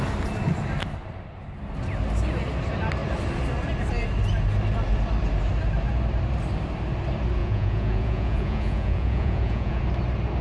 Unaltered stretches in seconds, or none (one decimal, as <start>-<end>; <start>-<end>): 0.0-7.4; 9.8-10.4